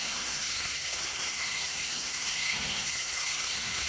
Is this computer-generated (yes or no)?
yes